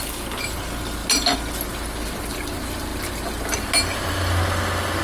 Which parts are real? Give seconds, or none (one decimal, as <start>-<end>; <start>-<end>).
0.0-5.0

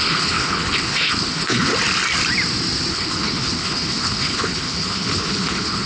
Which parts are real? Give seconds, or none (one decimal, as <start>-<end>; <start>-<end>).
1.7-2.9

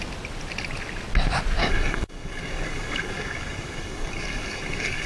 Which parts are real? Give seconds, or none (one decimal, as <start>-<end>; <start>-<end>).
0.0-1.6

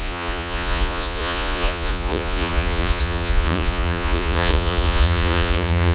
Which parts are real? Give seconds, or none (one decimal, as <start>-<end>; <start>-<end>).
none

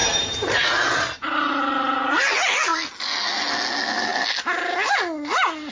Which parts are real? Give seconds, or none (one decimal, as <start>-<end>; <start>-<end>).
0.0-5.7

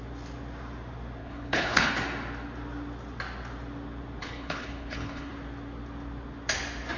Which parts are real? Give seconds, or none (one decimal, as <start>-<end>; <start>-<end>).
0.0-1.2; 1.9-4.2; 5.3-7.0

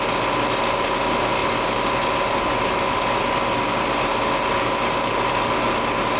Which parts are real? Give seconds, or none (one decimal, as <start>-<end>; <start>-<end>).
0.0-6.2